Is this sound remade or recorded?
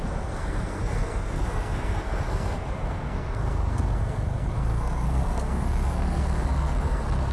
remade